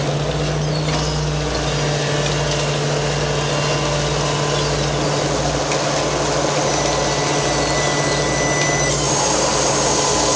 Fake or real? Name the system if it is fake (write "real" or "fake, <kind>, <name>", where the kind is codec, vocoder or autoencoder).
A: real